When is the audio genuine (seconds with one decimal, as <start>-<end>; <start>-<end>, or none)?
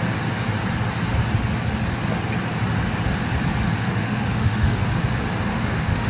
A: 0.0-3.8; 4.8-5.5